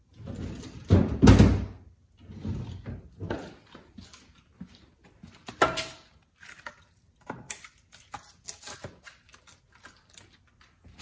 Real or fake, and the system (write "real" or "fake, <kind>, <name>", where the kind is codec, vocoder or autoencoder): real